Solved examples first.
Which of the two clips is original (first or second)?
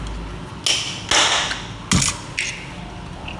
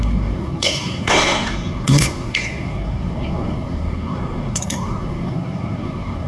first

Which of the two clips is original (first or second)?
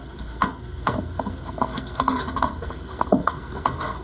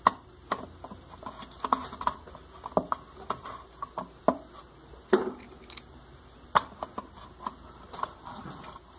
second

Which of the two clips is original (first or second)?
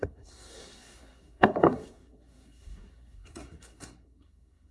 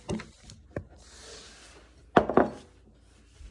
second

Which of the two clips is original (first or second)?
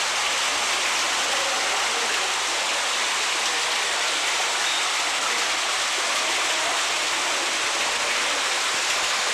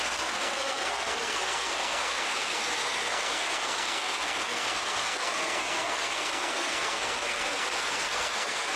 first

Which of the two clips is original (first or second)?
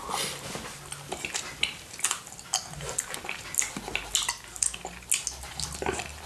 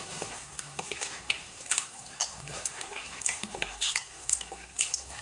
first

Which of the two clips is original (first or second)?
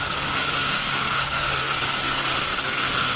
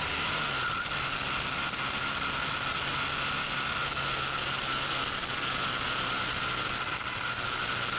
second